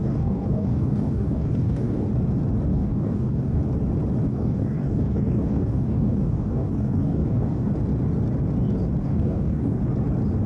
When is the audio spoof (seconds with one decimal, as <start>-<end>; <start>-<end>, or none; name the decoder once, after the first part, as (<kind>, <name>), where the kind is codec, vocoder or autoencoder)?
0.0-2.1 (codec, DAC); 2.7-3.6; 4.3-7.7; 9.0-9.8